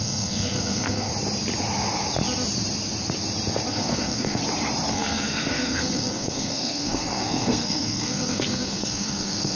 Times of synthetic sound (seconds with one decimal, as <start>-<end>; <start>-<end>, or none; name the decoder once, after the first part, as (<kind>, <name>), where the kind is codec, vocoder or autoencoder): 0.0-1.1 (codec, SNAC); 3.7-4.4; 4.9-9.6